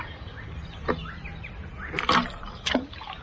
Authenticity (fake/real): real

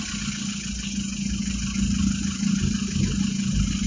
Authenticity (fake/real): real